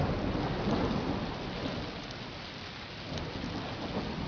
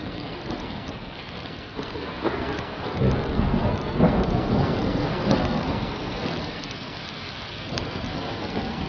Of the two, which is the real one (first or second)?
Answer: first